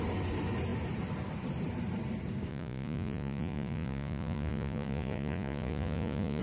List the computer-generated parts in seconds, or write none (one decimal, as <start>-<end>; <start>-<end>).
2.5-6.4